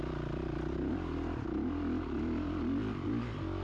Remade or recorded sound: recorded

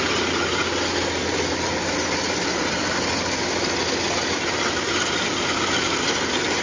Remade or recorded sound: recorded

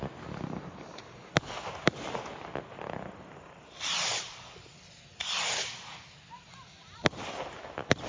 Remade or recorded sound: recorded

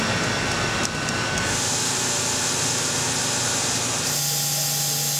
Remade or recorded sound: recorded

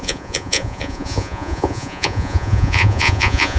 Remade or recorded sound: remade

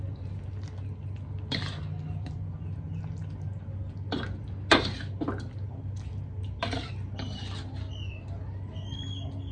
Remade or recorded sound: recorded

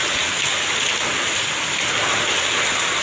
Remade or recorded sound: recorded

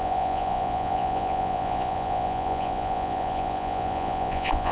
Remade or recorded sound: remade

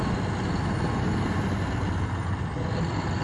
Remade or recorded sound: recorded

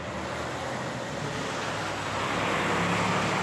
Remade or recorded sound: recorded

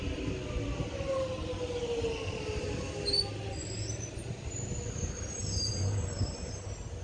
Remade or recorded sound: recorded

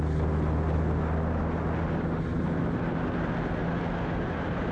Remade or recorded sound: recorded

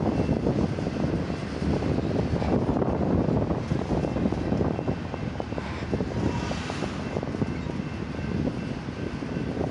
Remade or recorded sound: recorded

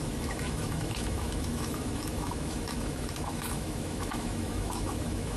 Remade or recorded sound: remade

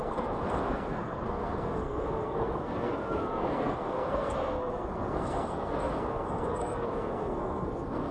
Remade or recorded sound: remade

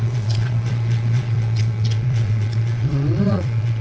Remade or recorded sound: remade